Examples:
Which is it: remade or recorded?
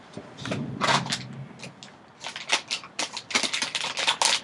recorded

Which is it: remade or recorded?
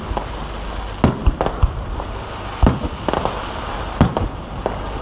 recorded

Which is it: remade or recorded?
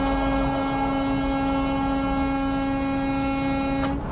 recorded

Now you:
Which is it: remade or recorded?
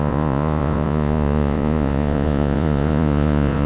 remade